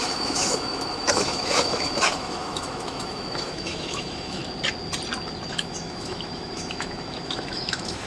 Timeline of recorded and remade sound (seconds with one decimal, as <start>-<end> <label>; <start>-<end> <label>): 0.0-4.4 remade; 4.4-5.5 recorded; 5.5-8.1 remade